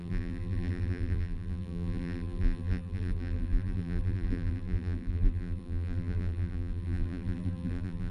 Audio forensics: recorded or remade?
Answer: remade